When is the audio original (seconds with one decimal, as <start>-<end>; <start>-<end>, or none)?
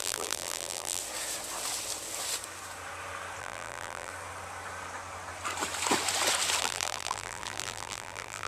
1.0-3.4; 4.1-6.6